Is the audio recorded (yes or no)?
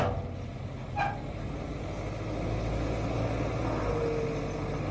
yes